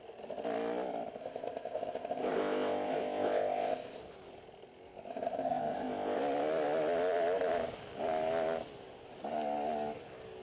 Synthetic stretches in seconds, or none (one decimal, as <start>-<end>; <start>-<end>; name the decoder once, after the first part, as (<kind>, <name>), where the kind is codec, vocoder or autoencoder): 1.2-4.0 (codec, ZipCodec); 5.1-6.2